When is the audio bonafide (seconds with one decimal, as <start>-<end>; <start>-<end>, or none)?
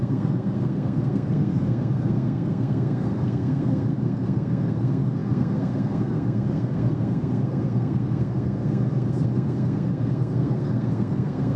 none